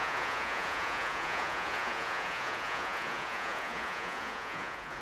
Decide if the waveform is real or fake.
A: fake